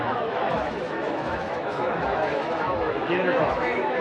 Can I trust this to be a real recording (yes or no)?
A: no